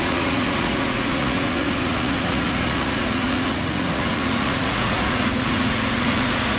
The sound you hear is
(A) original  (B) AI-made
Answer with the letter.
B